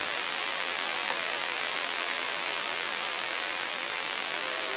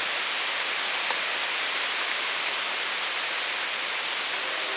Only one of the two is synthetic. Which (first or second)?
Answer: first